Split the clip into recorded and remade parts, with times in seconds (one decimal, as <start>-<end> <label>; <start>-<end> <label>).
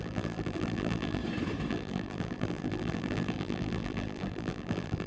0.0-1.2 remade; 1.2-1.7 recorded; 1.7-5.1 remade